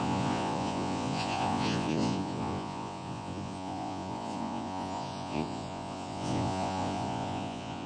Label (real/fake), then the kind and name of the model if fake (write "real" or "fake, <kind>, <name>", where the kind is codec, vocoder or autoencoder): fake, vocoder, Vocos